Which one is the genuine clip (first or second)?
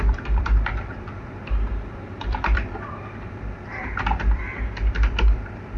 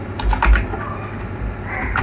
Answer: second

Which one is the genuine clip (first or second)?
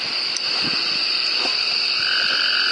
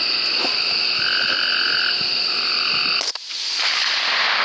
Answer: second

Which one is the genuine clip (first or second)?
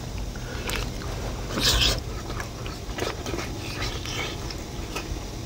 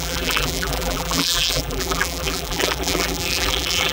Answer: first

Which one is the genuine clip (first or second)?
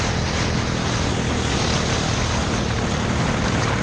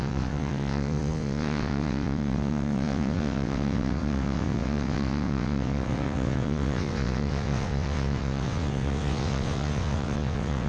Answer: first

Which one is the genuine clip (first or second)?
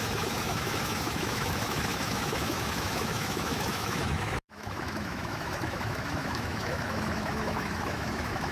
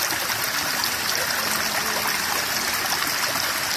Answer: second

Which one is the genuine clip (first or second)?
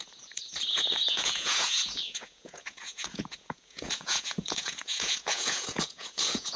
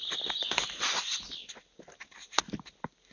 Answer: second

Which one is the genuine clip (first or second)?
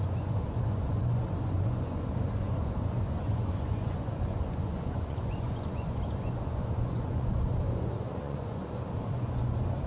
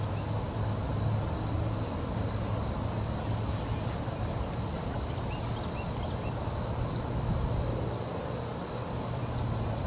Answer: second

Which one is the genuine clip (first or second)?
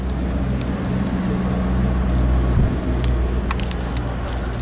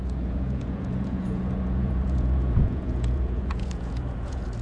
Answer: first